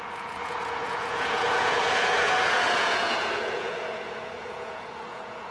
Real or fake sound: fake